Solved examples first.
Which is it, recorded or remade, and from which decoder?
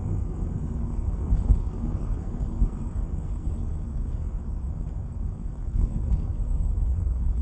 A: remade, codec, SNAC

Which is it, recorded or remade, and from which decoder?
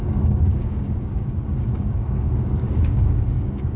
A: remade, codec, DAC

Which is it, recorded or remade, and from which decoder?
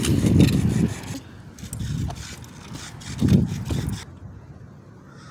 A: recorded